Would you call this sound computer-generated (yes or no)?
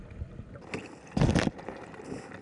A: no